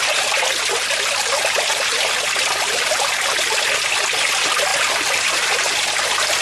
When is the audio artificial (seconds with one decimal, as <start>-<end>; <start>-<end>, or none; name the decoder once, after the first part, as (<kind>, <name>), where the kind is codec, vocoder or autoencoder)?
none